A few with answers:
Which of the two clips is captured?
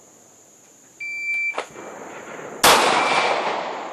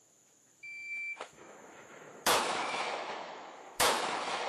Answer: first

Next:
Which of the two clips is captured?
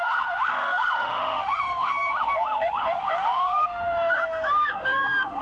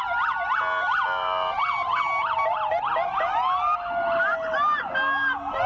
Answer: second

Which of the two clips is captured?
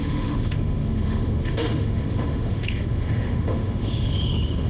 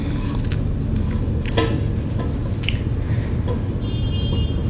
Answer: second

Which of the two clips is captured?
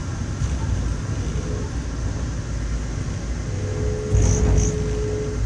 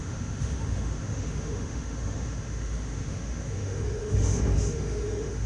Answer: first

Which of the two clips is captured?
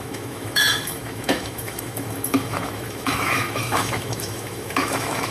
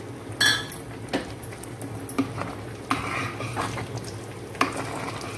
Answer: second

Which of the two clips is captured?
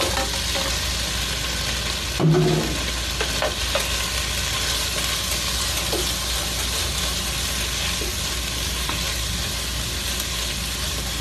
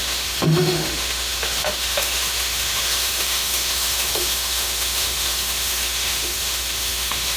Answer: first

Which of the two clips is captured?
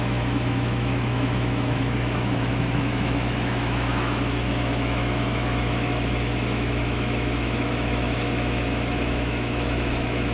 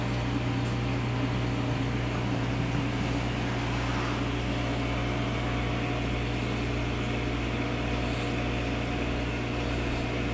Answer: second